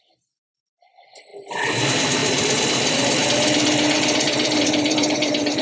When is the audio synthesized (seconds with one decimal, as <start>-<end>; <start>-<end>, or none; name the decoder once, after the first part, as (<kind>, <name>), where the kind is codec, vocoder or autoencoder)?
0.0-5.6 (vocoder, BigVGAN v2)